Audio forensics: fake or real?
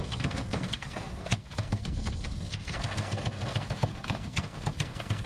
fake